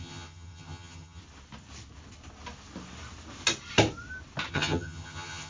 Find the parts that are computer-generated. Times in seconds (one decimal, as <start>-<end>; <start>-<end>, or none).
0.0-1.2; 4.5-5.5